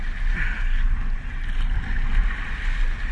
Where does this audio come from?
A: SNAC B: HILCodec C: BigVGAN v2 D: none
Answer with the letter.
D